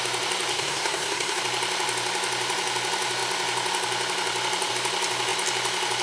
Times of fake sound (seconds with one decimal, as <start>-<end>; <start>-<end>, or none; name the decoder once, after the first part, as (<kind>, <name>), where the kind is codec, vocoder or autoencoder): 0.5-1.4 (codec, SNAC)